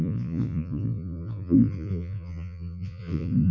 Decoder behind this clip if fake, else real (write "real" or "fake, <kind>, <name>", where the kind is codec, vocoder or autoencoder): fake, vocoder, Vocos